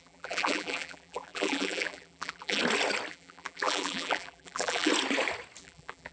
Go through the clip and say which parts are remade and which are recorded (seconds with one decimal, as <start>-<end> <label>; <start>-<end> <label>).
0.0-2.6 remade; 2.6-3.1 recorded; 3.1-4.9 remade; 4.9-5.6 recorded; 5.6-6.1 remade